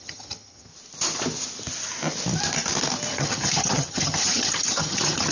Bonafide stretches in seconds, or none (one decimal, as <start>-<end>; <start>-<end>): 0.7-3.1